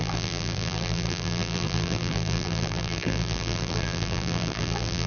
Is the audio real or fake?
fake